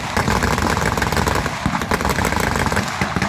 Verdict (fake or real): real